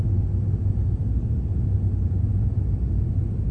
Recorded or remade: recorded